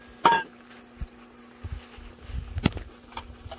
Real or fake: real